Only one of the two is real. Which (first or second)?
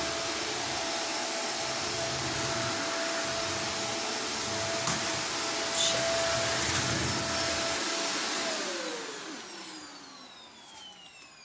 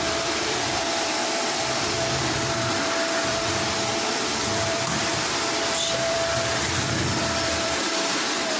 first